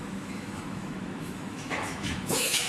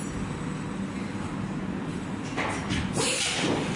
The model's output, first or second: first